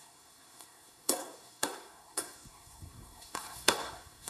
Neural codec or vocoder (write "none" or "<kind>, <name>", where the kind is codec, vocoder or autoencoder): codec, SNAC